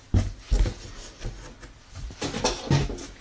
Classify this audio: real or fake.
real